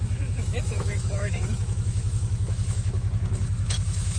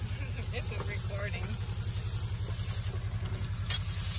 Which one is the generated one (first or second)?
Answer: first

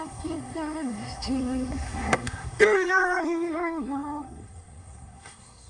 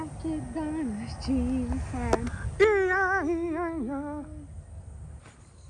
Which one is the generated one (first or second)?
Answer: first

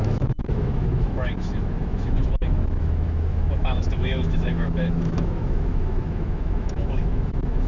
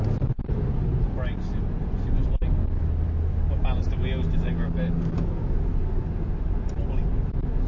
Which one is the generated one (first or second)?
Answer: first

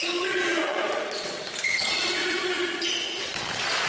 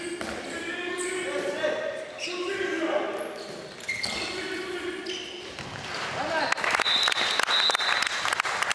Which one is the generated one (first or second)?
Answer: first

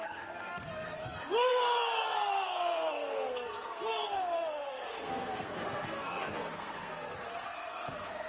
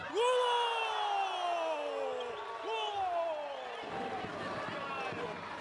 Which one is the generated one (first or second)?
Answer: first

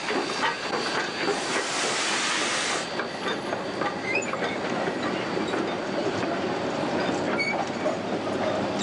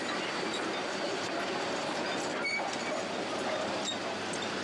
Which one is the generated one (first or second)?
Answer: first